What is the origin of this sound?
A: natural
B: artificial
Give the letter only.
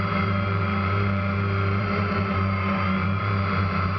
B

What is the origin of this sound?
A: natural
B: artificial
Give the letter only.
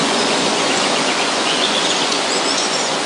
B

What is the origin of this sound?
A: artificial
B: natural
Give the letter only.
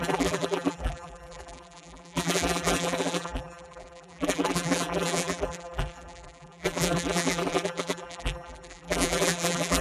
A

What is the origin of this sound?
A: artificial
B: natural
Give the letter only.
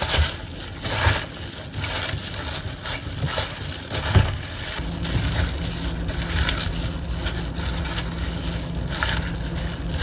B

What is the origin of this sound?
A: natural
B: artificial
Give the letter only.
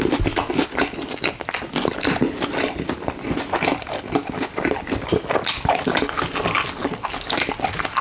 A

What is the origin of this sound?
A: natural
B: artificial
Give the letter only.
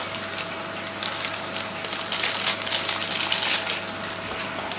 A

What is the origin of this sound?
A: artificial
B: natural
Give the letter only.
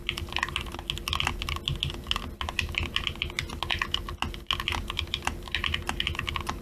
B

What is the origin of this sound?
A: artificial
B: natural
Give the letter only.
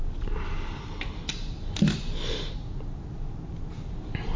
B